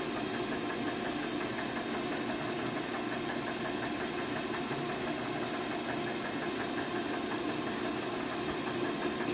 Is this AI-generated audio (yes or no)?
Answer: no